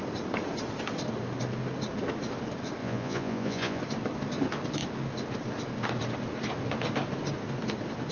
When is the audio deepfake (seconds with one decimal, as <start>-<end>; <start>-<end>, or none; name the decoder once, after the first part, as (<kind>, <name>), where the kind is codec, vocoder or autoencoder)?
2.8-3.8 (vocoder, Vocos)